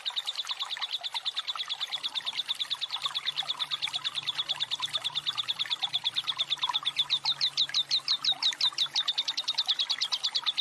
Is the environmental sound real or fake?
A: real